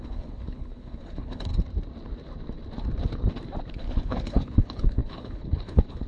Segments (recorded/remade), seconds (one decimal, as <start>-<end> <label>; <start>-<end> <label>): 0.0-1.5 remade; 1.5-3.7 recorded; 3.7-6.1 remade